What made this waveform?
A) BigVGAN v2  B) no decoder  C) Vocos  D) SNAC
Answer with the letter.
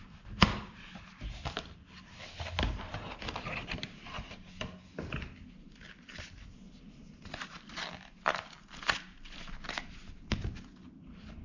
B